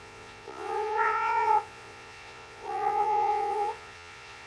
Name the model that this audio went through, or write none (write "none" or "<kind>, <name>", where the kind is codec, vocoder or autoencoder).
vocoder, Vocos